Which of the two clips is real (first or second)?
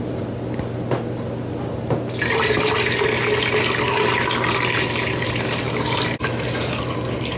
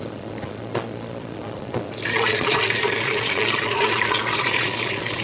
first